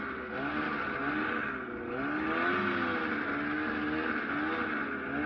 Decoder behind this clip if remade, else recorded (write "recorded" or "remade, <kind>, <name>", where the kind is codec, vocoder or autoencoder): recorded